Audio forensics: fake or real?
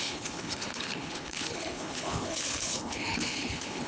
fake